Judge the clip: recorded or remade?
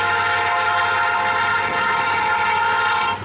recorded